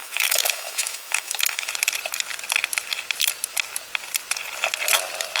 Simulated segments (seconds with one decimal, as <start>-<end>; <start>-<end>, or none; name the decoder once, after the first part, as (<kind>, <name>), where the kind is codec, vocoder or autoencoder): 0.0-1.7 (autoencoder, DAC-VAE)